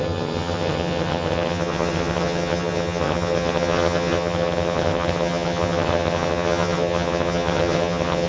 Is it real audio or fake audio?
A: fake